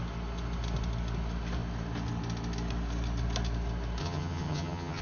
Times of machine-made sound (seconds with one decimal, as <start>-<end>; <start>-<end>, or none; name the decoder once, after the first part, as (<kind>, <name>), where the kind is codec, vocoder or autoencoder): 4.0-5.0 (vocoder, HiFi-GAN)